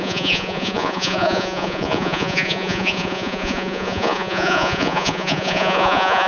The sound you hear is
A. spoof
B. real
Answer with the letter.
A